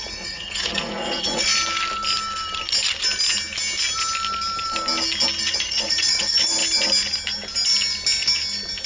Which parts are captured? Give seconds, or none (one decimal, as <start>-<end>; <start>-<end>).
1.5-5.4; 6.6-8.9

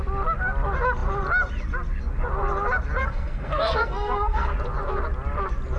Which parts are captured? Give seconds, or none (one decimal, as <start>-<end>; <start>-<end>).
0.0-3.0; 4.5-5.8

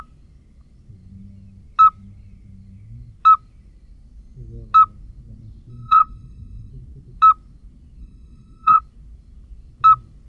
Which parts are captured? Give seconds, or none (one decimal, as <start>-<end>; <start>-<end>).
0.0-5.7; 6.7-8.0; 8.8-10.3

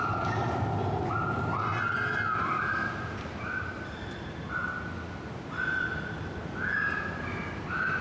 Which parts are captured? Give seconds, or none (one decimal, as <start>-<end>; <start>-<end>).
0.4-3.0; 4.6-5.9

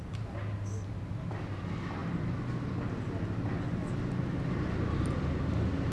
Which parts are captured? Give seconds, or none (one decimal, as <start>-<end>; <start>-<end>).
0.0-5.9

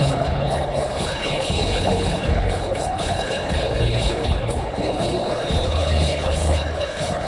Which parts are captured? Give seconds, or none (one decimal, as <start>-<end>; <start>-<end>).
none